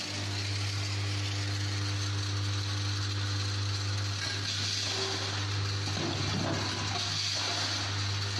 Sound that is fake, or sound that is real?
real